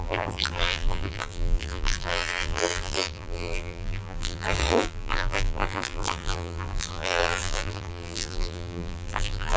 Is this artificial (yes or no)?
yes